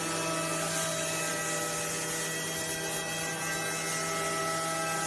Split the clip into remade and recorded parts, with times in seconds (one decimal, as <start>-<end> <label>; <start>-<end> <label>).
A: 0.0-5.1 recorded

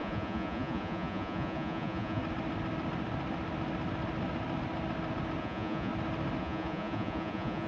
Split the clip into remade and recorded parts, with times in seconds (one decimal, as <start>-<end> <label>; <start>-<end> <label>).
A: 0.0-2.2 remade; 2.2-5.4 recorded; 5.4-5.9 remade; 5.9-6.4 recorded; 6.4-7.7 remade

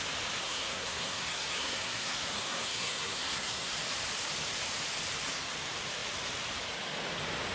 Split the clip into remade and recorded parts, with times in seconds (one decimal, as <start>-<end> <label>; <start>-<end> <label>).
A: 0.0-0.4 recorded; 0.4-3.7 remade; 3.7-7.5 recorded

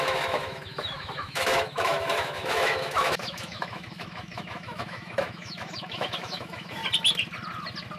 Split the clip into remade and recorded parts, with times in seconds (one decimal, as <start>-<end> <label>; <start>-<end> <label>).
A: 0.0-6.8 remade; 6.8-8.0 recorded

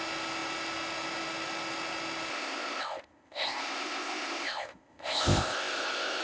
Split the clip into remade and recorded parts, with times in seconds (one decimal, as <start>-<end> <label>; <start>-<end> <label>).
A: 0.0-2.3 recorded; 2.3-6.2 remade

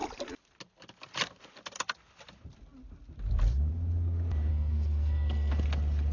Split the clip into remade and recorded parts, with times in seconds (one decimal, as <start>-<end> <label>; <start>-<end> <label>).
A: 0.0-4.5 recorded; 4.5-5.5 remade; 5.5-6.1 recorded

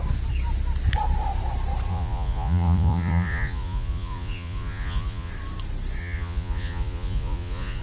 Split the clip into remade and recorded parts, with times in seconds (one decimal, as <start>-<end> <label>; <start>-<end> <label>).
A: 0.0-1.9 recorded; 1.9-5.3 remade; 5.3-6.0 recorded; 6.0-7.8 remade

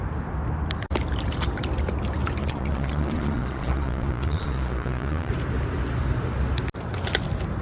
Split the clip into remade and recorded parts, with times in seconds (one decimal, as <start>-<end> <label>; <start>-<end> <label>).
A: 0.0-2.4 recorded; 2.4-5.3 remade; 5.3-7.6 recorded